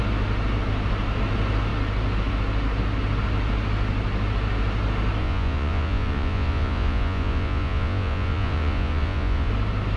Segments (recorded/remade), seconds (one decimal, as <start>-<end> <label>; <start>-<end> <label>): 0.0-5.2 recorded; 5.2-9.5 remade; 9.5-10.0 recorded